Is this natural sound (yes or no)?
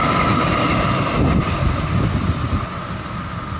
yes